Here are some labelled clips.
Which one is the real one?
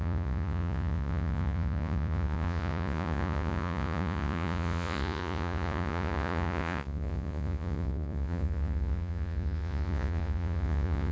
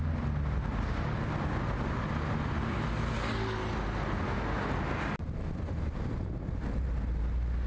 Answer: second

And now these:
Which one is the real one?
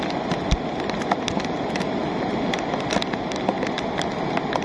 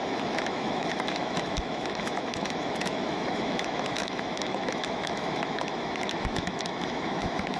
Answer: first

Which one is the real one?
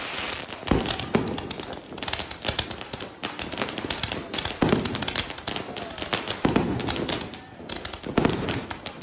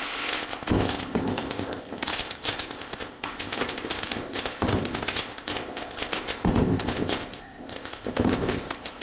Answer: first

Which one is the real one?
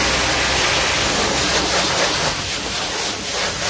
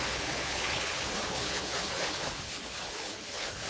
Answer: first